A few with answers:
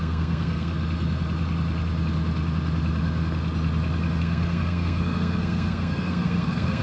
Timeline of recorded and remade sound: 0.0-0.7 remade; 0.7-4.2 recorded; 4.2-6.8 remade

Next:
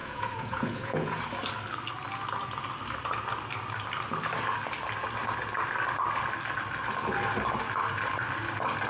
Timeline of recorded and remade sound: 0.0-1.2 remade; 1.2-8.9 recorded

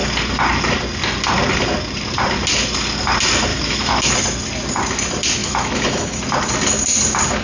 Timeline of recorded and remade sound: 0.0-3.5 recorded; 3.5-4.1 remade; 4.1-5.4 recorded; 5.4-6.2 remade; 6.2-7.4 recorded